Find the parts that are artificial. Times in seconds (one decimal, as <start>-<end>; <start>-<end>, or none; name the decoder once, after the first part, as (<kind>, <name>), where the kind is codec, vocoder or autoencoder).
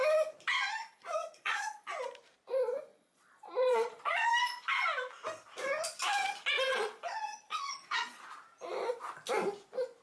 0.8-1.9 (vocoder, Vocos); 2.9-4.3; 6.7-8.2